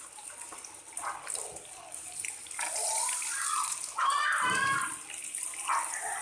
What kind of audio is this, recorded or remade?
recorded